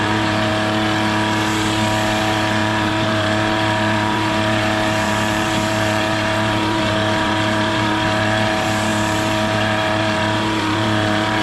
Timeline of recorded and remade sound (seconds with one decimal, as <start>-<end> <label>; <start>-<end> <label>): 0.0-0.5 remade; 0.5-2.2 recorded; 2.2-11.4 remade